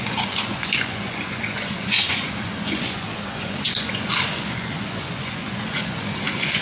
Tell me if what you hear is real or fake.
fake